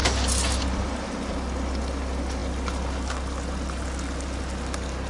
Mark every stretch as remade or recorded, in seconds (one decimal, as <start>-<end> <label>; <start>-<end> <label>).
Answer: 0.0-5.1 recorded